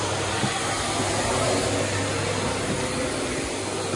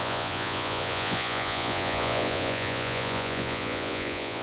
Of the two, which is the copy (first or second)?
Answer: second